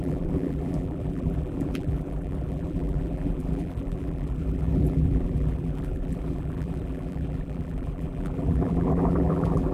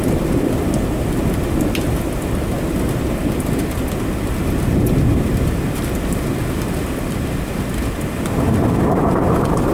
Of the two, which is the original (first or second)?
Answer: second